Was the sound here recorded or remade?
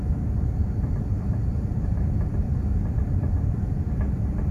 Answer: remade